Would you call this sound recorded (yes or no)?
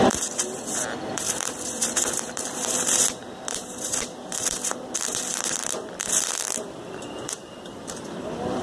no